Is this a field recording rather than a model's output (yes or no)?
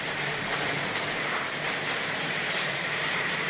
no